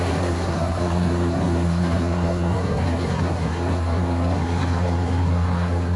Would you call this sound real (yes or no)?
no